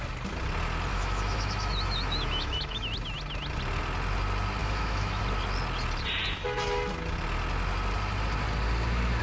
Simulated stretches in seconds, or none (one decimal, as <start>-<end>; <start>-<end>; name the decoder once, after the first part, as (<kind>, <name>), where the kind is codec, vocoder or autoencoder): 0.9-2.9 (autoencoder, DAC-VAE); 4.6-5.2